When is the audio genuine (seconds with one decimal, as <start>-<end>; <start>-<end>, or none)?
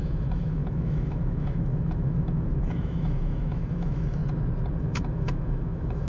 4.2-4.8